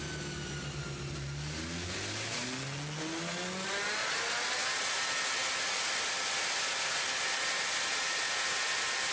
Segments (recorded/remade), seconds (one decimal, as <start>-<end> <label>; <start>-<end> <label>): 0.0-9.1 recorded